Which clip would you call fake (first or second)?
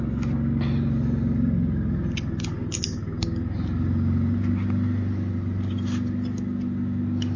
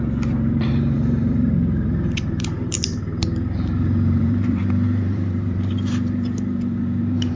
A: second